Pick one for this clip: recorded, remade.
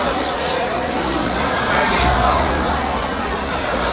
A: remade